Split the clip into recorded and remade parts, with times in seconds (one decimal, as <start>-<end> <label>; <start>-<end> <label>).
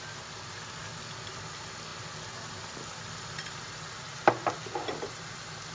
0.0-5.7 recorded